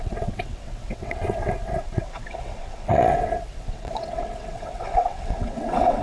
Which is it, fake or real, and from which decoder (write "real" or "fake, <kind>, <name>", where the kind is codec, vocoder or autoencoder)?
fake, vocoder, WaveNeXt